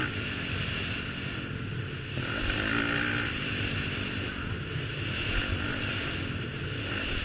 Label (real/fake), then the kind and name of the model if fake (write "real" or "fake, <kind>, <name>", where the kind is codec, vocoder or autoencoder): real